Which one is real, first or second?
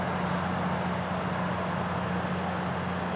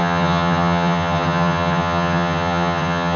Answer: first